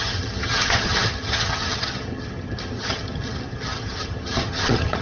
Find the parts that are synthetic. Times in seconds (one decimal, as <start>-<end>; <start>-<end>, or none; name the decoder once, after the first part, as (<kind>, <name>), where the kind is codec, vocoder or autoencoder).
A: 0.0-5.0 (vocoder, HiFi-GAN)